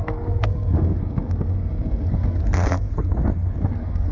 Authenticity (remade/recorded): remade